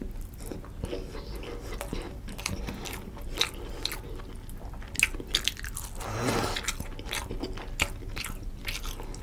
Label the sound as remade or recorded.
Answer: recorded